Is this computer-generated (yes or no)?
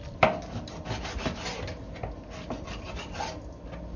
no